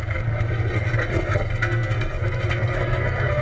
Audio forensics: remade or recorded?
remade